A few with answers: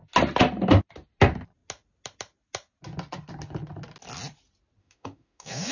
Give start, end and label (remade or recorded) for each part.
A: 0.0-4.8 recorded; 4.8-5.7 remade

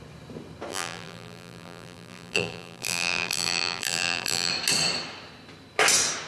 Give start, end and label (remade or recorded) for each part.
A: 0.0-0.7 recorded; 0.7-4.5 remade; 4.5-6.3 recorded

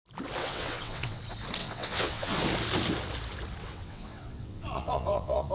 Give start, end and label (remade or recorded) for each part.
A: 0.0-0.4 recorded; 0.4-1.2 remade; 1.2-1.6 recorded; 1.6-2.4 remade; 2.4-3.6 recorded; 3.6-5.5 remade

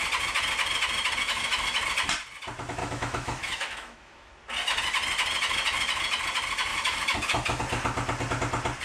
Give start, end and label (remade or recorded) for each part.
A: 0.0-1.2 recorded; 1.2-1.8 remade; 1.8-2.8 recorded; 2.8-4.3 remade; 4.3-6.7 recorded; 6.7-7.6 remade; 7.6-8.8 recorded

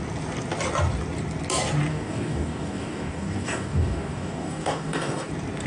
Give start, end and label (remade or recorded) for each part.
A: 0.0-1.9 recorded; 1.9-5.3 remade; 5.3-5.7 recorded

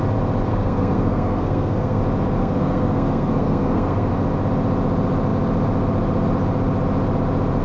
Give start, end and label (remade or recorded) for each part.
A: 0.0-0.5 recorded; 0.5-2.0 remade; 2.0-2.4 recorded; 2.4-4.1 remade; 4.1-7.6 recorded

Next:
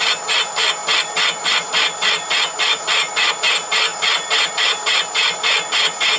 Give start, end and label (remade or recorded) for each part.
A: 0.0-6.2 recorded

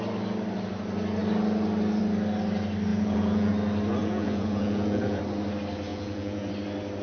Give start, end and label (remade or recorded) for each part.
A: 0.0-2.9 recorded; 2.9-3.5 remade; 3.5-4.0 recorded; 4.0-5.2 remade; 5.2-5.9 recorded; 5.9-6.5 remade; 6.5-7.0 recorded